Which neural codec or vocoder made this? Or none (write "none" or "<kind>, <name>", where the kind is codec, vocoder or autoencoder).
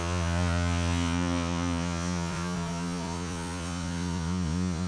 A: vocoder, Vocos